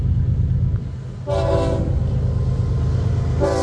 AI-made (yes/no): no